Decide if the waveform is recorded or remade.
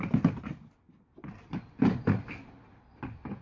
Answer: recorded